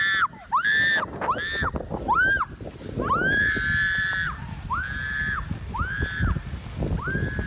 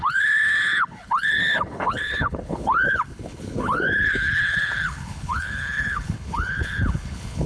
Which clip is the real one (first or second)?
first